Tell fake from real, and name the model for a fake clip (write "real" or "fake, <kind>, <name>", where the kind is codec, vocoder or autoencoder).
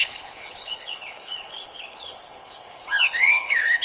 fake, codec, HILCodec